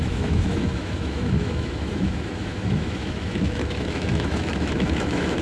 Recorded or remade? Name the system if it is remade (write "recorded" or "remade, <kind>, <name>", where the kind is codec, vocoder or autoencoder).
remade, autoencoder, DAC-VAE